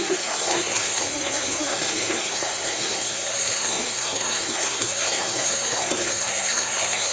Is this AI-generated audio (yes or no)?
yes